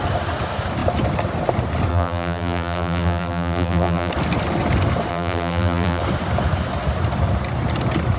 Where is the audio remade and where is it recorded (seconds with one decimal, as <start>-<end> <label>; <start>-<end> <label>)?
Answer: 0.0-1.9 recorded; 1.9-4.1 remade; 4.1-5.1 recorded; 5.1-6.0 remade; 6.0-8.2 recorded